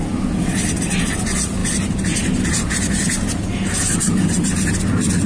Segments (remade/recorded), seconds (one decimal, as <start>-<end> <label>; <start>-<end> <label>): 0.0-5.3 recorded